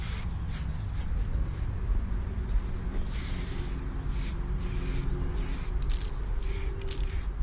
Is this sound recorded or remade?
recorded